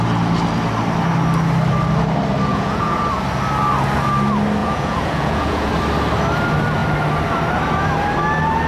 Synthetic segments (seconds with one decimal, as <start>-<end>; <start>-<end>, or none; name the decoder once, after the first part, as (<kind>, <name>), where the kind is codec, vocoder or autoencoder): 2.5-3.0 (vocoder, Vocos); 4.6-5.7